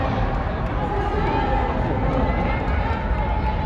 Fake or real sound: real